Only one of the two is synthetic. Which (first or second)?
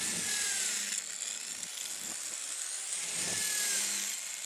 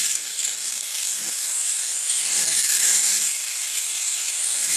second